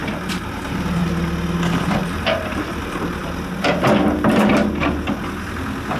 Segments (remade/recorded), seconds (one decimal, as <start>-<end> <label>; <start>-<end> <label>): 0.0-1.0 remade; 1.0-2.0 recorded; 2.0-2.8 remade; 2.8-6.0 recorded